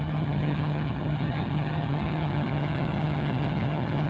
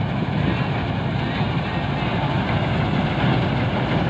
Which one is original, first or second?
second